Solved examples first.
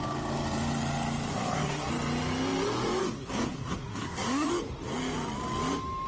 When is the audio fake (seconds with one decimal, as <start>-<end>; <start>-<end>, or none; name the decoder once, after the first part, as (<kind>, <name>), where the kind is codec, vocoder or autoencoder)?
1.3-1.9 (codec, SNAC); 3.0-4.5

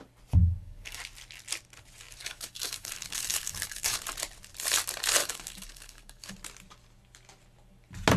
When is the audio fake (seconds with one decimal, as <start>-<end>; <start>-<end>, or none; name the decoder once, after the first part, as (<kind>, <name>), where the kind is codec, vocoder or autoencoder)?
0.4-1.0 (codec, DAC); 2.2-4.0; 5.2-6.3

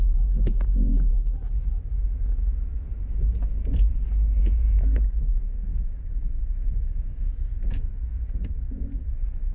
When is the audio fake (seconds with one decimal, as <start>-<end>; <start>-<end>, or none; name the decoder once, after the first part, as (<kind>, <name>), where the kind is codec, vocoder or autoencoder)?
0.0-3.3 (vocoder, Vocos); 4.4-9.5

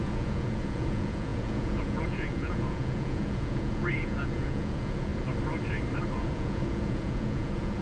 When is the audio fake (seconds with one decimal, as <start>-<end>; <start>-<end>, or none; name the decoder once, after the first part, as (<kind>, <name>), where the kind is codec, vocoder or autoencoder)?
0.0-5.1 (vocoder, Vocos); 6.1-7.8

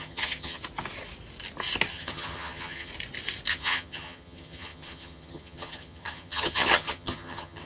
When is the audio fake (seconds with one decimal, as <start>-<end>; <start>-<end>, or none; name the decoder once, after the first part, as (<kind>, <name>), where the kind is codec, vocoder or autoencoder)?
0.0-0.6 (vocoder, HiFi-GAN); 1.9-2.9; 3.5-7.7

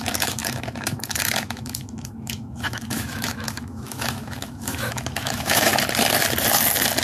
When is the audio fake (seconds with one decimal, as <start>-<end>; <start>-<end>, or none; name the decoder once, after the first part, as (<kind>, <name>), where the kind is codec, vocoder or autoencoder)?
0.0-5.7 (autoencoder, DAC-VAE)

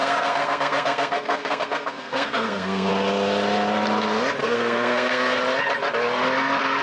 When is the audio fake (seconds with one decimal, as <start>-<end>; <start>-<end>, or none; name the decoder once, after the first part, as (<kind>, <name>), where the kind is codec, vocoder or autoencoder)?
0.0-2.9 (codec, SNAC); 4.4-5.4